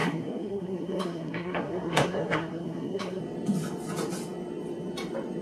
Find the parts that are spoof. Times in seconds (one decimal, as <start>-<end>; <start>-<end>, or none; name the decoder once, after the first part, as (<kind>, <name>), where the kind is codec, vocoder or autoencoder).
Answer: 0.0-3.2 (codec, SNAC)